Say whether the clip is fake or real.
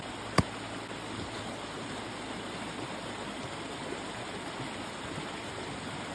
real